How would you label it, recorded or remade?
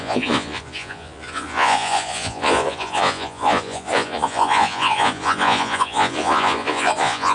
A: remade